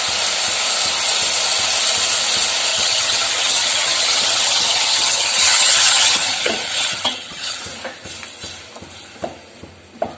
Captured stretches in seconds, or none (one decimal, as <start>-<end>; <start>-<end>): 0.0-2.7; 7.6-10.2